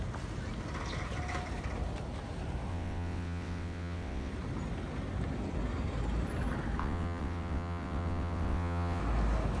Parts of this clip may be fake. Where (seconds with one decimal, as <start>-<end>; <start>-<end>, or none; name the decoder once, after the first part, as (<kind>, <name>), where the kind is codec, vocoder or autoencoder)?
2.7-4.3 (vocoder, WaveNeXt); 6.8-9.0